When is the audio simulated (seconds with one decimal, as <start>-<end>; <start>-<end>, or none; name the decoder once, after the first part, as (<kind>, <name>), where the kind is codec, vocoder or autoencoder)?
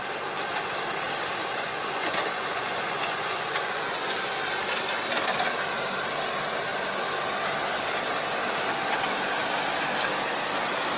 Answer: 1.4-4.3 (vocoder, Vocos)